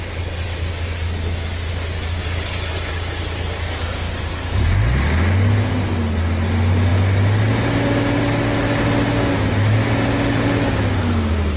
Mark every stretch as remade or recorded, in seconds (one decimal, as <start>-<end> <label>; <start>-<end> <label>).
0.0-11.6 recorded